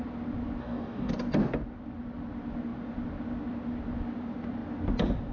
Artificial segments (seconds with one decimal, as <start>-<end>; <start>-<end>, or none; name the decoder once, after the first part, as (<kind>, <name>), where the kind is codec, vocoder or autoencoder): 0.6-1.1 (codec, DAC)